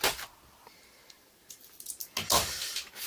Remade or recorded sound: recorded